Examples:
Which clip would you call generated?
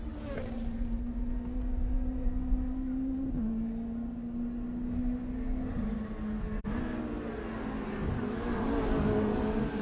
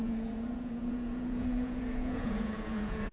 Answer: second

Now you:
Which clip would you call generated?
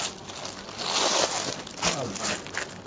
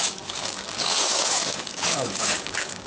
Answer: second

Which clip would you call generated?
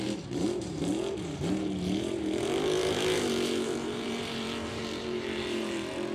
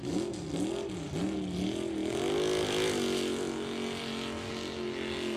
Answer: first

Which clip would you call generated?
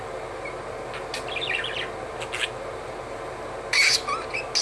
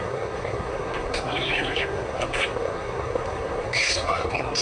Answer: second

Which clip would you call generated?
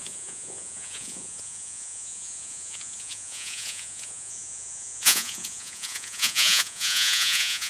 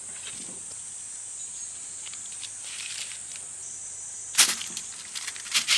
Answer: first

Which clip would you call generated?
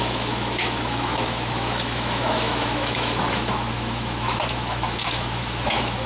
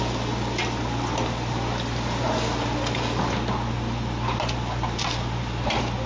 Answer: first